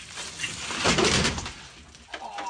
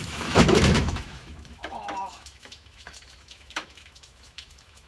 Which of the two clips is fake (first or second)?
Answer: second